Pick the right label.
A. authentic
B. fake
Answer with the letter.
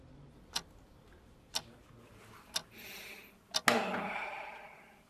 A